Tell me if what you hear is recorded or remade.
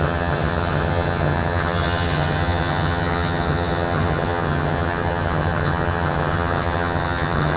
remade